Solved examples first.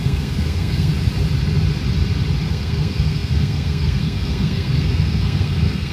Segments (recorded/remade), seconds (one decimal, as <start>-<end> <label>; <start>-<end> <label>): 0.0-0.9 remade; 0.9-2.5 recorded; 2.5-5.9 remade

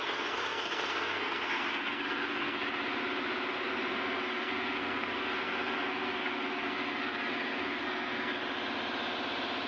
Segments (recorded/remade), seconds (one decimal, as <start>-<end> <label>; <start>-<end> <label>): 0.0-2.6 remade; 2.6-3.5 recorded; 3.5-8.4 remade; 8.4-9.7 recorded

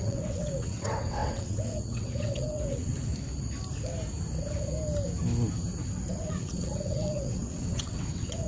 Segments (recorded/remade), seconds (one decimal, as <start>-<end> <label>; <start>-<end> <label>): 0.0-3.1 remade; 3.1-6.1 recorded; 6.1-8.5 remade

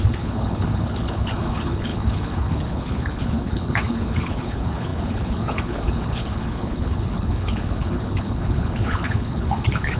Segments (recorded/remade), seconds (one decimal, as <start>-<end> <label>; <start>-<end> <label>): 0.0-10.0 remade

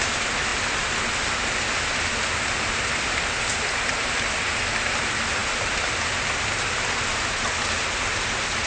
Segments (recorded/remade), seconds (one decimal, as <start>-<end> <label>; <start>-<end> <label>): 0.0-8.7 recorded

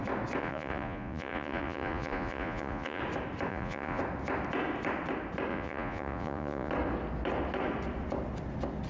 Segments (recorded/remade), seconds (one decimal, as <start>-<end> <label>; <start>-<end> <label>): 0.0-0.4 recorded; 0.4-3.0 remade; 3.0-3.5 recorded; 3.5-4.0 remade; 4.0-5.5 recorded; 5.5-6.7 remade; 6.7-8.9 recorded

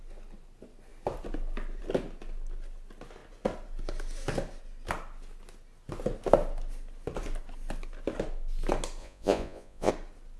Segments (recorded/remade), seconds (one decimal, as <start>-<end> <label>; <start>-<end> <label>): 0.0-9.0 recorded; 9.0-9.9 remade; 9.9-10.4 recorded

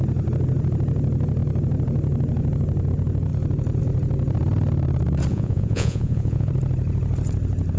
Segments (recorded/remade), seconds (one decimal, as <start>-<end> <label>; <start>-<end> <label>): 0.0-5.3 recorded; 5.3-6.5 remade; 6.5-7.8 recorded